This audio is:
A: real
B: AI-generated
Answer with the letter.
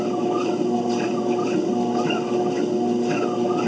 A